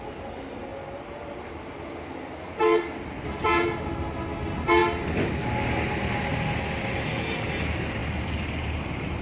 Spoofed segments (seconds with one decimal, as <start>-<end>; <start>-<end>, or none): 8.0-9.2